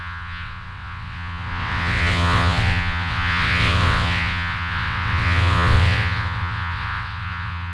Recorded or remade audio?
remade